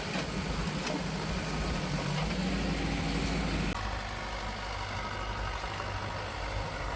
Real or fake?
real